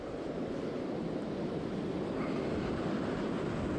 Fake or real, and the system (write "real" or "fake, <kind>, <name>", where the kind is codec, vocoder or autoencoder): real